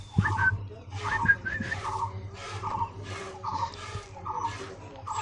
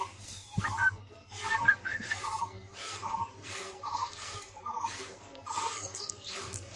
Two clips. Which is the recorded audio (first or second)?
first